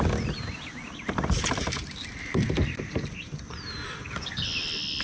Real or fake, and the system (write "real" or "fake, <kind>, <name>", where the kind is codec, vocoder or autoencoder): real